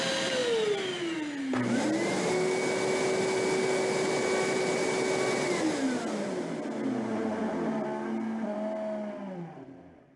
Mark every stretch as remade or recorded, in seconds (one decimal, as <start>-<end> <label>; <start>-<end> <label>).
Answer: 0.0-10.2 recorded